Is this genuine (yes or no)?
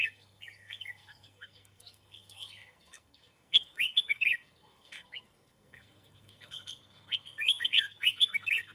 no